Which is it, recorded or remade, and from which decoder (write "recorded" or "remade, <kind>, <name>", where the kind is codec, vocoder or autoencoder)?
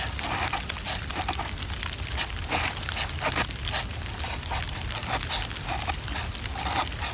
recorded